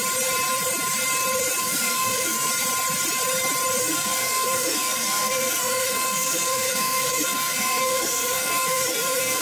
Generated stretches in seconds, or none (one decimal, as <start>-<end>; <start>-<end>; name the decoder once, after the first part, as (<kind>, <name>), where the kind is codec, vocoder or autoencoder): 1.6-2.5 (codec, SNAC); 3.8-9.4